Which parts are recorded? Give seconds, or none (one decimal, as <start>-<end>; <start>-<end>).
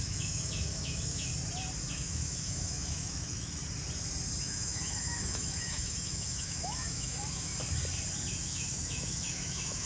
1.3-1.9; 3.6-4.4; 7.5-8.3